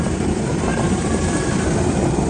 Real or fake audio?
fake